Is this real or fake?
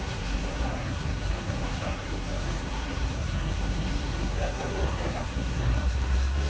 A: fake